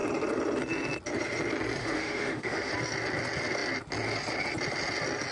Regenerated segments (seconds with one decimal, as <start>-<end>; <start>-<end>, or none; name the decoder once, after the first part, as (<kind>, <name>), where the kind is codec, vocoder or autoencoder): 1.8-2.7 (autoencoder, DAC-VAE)